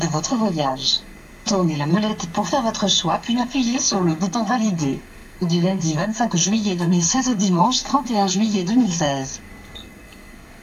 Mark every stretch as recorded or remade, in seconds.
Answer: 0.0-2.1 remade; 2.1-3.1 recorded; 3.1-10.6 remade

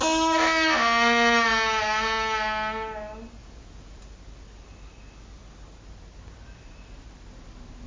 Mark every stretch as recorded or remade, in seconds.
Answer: 0.0-3.4 recorded; 3.4-4.0 remade; 4.0-7.9 recorded

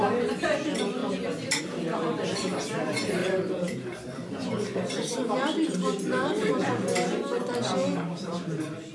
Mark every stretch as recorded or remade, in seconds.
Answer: 0.0-3.2 recorded; 3.2-6.5 remade; 6.5-8.9 recorded

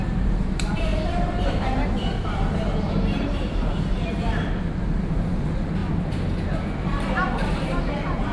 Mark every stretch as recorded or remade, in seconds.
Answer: 0.0-5.8 remade; 5.8-7.0 recorded; 7.0-8.3 remade